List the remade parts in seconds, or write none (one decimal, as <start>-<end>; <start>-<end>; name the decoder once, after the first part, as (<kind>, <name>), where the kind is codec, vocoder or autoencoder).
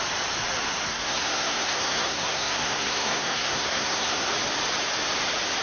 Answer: 0.9-4.3 (codec, SNAC)